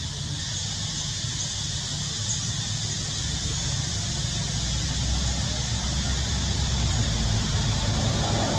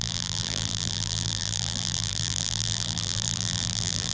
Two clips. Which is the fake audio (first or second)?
second